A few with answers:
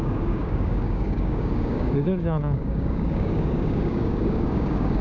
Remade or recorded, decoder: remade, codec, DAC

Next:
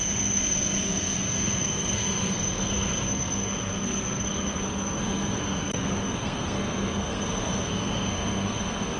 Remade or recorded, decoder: remade, codec, SNAC